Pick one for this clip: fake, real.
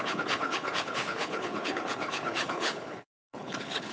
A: fake